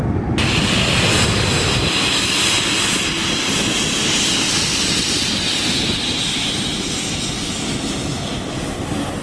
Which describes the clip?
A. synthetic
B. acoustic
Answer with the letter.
B